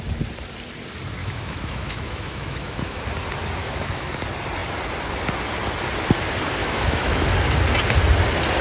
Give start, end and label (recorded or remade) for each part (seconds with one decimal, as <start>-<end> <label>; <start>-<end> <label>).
0.0-1.2 recorded; 1.2-3.0 remade; 3.0-3.6 recorded; 3.6-4.1 remade; 4.1-6.6 recorded; 6.6-7.3 remade; 7.3-8.6 recorded